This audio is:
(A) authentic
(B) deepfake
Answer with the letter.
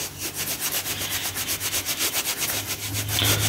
A